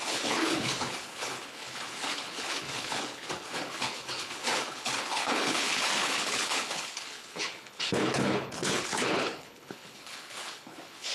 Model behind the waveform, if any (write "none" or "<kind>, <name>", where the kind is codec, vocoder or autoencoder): codec, HILCodec